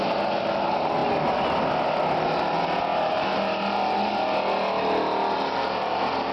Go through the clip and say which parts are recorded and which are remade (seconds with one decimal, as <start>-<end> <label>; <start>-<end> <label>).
0.0-6.3 recorded